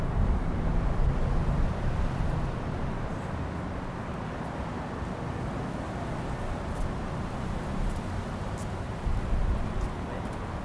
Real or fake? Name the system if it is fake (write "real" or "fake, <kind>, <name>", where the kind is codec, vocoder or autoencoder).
real